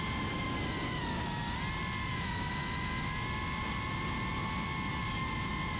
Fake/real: real